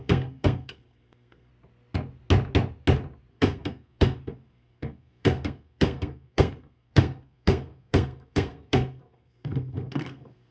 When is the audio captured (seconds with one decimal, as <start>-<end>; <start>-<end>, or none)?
1.5-3.3